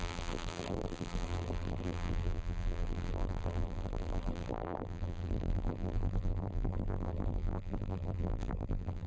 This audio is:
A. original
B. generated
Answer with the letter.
B